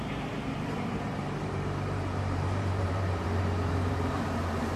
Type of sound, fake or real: fake